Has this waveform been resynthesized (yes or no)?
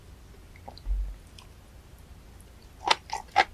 no